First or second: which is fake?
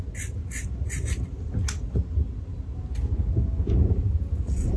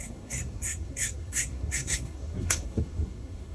second